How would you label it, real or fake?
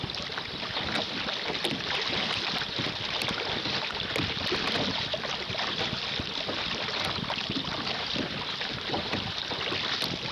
real